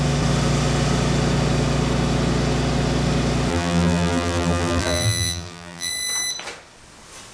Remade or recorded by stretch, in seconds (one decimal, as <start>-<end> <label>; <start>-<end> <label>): 0.0-3.5 recorded; 3.5-5.9 remade; 5.9-7.3 recorded